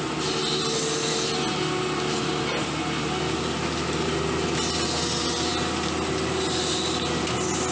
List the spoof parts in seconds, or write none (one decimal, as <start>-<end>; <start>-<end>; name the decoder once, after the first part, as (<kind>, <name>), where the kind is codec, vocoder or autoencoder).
none